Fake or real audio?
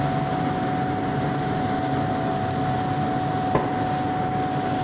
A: real